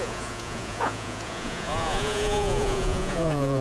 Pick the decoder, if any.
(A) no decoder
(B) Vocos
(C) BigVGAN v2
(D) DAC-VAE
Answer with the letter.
B